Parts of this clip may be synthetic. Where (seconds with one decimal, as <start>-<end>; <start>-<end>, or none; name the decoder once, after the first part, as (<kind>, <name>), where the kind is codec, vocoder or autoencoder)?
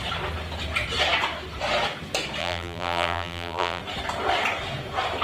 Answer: 2.4-3.8 (vocoder, BigVGAN v2)